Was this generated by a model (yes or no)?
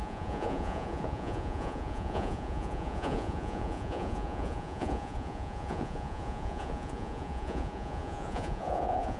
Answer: yes